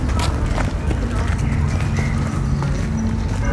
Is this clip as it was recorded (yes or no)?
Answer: yes